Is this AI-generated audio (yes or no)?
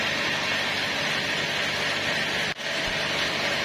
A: no